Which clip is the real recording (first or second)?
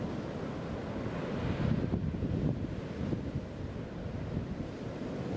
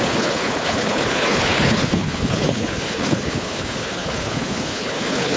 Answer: first